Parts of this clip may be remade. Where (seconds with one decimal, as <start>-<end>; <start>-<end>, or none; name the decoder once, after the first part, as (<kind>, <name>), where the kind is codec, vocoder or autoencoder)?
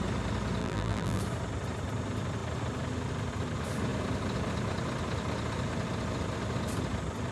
0.6-1.2 (vocoder, BigVGAN v2)